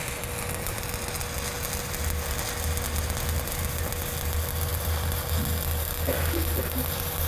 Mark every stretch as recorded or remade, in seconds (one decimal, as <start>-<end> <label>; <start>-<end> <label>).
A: 0.0-4.7 recorded; 4.7-5.2 remade; 5.2-7.3 recorded